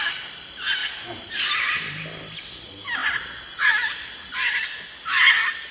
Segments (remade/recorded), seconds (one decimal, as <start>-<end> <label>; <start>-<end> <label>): 0.0-0.8 recorded; 0.8-2.3 remade; 2.3-5.7 recorded